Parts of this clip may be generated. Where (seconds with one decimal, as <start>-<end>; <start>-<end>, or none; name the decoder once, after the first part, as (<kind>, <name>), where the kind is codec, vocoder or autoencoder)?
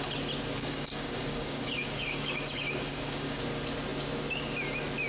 0.6-3.4 (codec, DAC)